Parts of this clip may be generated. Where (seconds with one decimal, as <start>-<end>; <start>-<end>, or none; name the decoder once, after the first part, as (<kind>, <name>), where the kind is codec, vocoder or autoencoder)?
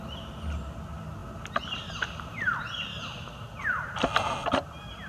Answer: none